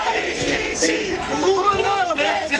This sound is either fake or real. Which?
fake